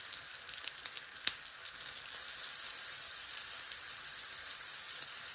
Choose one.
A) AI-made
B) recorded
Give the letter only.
B